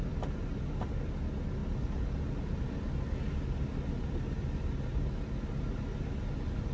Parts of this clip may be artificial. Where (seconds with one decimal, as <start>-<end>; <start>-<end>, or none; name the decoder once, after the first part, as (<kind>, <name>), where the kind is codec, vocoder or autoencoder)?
none